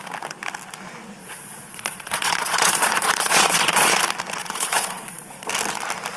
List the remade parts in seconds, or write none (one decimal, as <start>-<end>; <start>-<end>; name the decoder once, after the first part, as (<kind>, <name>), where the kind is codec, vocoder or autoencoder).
1.2-4.0 (vocoder, Vocos); 4.4-5.5